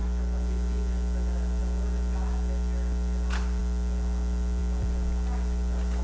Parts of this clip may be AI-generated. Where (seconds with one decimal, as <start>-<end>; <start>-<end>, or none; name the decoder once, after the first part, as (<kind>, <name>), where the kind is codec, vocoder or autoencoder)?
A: none